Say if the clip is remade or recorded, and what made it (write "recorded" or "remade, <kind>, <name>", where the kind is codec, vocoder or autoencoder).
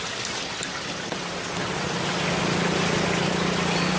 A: recorded